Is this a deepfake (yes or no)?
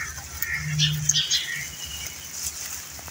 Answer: no